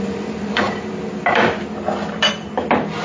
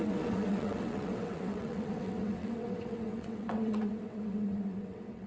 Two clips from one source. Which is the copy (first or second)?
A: second